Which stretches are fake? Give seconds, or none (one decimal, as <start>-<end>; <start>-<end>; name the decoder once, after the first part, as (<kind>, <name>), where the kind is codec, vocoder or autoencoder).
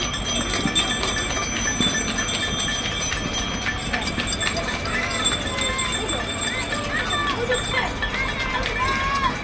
none